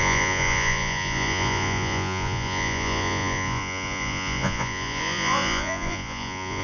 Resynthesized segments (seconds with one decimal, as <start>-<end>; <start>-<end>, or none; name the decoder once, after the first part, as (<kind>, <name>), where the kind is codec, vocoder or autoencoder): 0.0-6.6 (vocoder, Vocos)